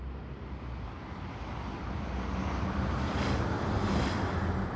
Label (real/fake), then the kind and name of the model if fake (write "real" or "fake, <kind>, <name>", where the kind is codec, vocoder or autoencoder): real